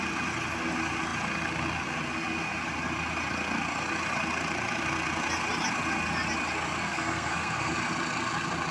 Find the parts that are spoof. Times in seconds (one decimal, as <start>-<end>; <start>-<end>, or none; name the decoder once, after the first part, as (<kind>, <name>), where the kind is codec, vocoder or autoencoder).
6.8-7.7 (codec, SNAC)